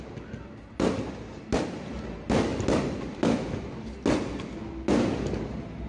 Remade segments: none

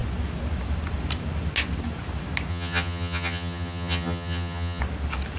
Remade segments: 2.5-4.8